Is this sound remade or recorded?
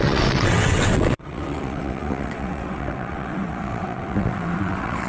remade